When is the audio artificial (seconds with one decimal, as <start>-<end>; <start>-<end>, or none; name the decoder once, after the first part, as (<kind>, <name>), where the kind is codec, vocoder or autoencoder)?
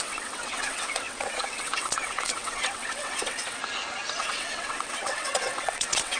0.0-3.6 (vocoder, WaveNeXt); 4.2-6.2